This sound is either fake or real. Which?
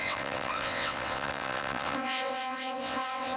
fake